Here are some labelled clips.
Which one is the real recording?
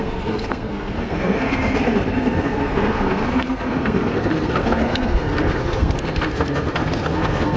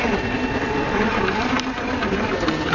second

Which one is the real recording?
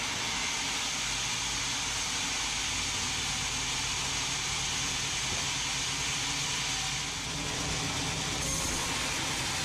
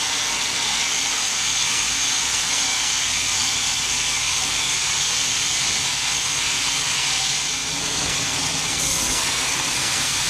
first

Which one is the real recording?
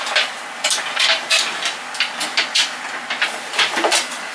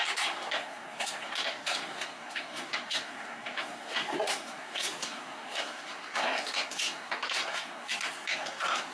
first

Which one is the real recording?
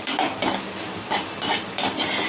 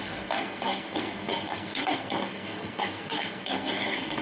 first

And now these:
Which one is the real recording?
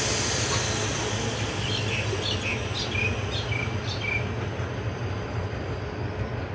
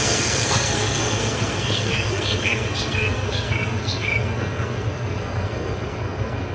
first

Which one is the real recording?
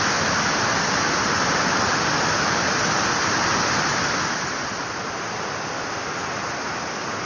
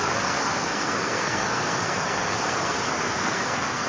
first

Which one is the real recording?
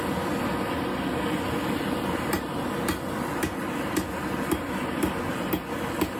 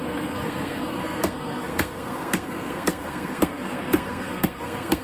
first